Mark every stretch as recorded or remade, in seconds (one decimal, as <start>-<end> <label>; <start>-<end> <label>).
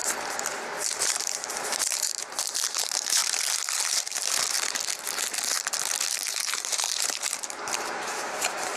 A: 0.0-1.0 recorded; 1.0-3.2 remade; 3.2-6.1 recorded; 6.1-8.8 remade